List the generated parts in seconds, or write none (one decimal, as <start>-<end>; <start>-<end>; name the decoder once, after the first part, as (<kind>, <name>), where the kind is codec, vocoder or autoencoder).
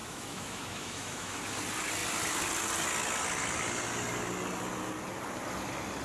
0.0-1.4 (autoencoder, DAC-VAE)